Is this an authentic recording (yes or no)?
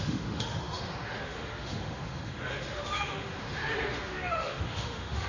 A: no